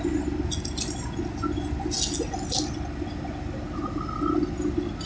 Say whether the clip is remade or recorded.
recorded